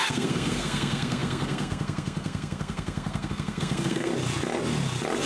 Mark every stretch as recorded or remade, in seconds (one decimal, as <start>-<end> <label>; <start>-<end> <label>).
0.0-4.1 remade; 4.1-5.3 recorded